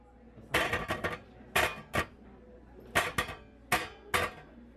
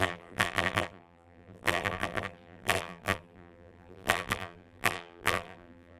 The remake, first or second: second